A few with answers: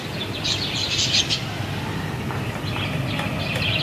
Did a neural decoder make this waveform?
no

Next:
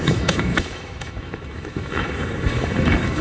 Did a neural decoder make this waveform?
yes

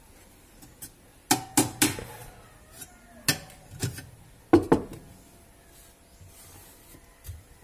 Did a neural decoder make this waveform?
no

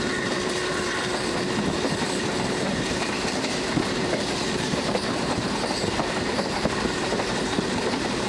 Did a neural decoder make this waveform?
yes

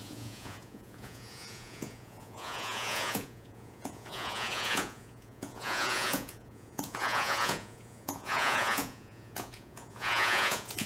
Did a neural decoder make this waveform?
yes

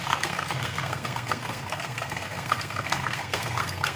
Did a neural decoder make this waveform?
yes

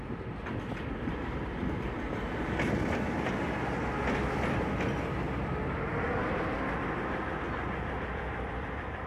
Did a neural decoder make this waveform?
no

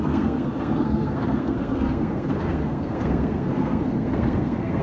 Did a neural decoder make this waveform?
yes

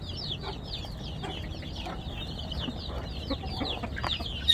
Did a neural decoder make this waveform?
no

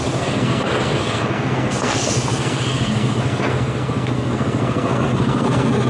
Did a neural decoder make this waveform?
yes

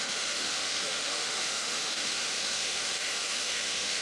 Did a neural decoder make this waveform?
yes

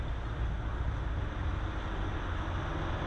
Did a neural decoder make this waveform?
no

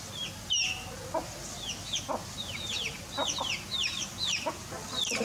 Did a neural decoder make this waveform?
no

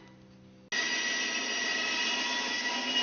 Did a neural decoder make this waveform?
no